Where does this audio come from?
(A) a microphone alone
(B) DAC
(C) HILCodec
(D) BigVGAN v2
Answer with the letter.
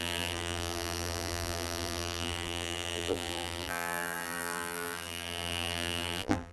D